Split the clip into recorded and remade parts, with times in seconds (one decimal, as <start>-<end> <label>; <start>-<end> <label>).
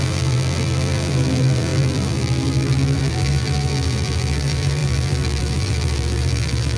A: 0.0-6.8 remade